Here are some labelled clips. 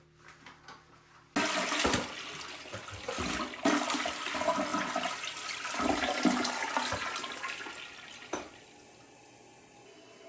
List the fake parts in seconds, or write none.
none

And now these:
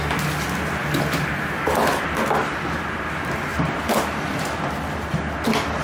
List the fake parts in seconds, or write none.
0.8-2.0 (vocoder, BigVGAN v2); 3.5-4.4

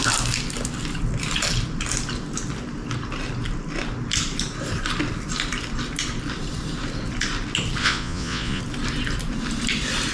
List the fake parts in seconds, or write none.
7.8-8.6 (vocoder, Vocos)

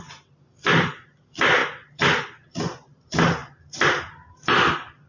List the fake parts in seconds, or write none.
none